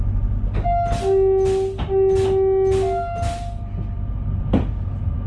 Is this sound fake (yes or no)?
no